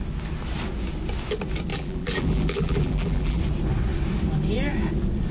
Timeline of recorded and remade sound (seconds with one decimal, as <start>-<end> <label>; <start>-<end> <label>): 0.0-1.7 recorded; 1.7-3.4 remade; 3.4-5.3 recorded